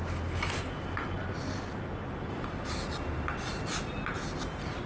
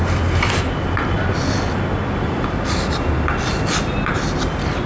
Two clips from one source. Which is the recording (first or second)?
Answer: first